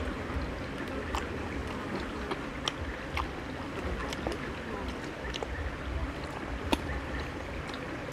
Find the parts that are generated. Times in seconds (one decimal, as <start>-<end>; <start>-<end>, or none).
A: 4.0-4.7; 6.0-8.1